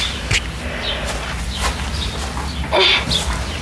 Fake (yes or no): no